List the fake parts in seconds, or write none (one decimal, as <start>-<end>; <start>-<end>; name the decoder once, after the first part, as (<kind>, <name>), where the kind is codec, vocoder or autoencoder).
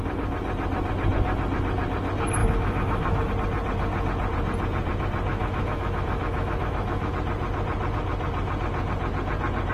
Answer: 2.4-3.3 (autoencoder, DAC-VAE); 5.3-7.1